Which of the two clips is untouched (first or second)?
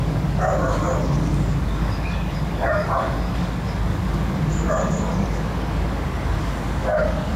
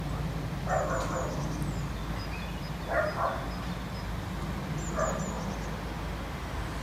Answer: second